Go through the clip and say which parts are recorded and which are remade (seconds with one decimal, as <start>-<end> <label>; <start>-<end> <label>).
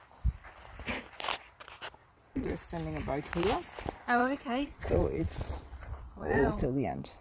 0.0-2.0 recorded; 2.0-2.5 remade; 2.5-4.2 recorded; 4.2-7.2 remade